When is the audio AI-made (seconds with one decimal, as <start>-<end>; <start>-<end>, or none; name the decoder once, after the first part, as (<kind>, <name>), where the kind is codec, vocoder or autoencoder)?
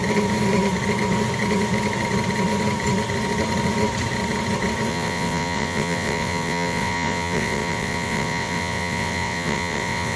4.9-10.2 (vocoder, WaveNeXt)